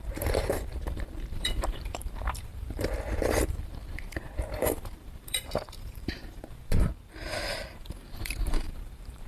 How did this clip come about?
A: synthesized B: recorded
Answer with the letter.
A